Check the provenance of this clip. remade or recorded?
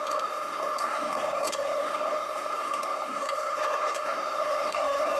remade